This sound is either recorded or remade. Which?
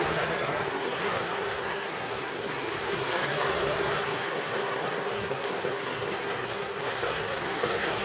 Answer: remade